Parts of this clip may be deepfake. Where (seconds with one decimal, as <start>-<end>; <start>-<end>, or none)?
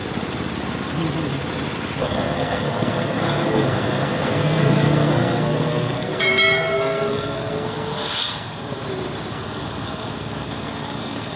2.0-8.8; 9.3-11.4